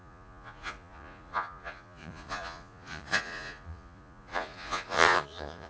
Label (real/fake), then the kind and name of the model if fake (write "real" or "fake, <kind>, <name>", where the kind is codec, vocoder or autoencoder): fake, vocoder, Vocos